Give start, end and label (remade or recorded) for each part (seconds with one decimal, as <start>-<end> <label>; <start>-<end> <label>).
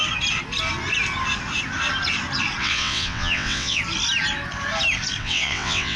0.0-2.6 recorded; 2.6-3.8 remade; 3.8-5.2 recorded; 5.2-6.0 remade